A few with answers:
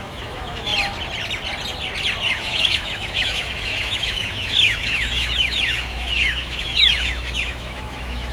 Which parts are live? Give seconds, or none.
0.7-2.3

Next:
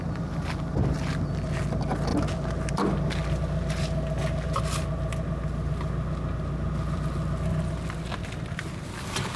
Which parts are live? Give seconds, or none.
0.0-9.4

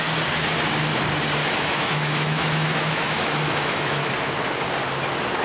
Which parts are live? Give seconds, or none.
0.0-1.4; 4.1-5.4

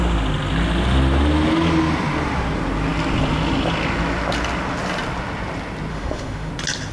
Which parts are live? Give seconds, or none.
0.0-5.9; 6.5-6.9

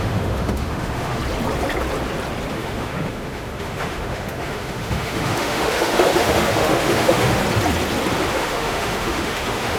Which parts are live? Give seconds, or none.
1.2-2.5; 7.4-8.3

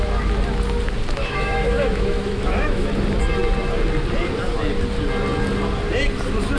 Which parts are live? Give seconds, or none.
0.0-1.2; 2.9-6.6